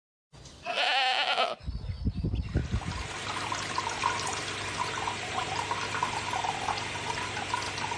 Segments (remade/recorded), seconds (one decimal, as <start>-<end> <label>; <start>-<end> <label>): 0.0-8.0 recorded